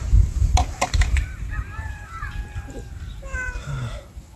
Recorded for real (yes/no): no